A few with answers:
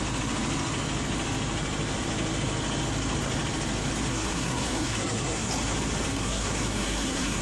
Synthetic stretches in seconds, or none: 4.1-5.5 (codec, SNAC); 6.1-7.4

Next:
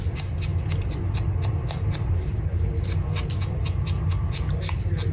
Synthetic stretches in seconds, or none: none